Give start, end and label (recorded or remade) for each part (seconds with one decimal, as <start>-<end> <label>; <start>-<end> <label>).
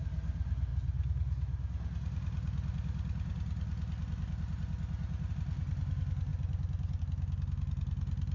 0.0-8.3 recorded